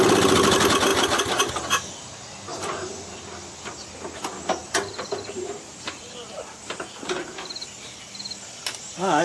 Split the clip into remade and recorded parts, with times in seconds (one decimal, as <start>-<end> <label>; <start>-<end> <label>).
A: 0.0-4.6 recorded; 4.6-6.8 remade; 6.8-9.2 recorded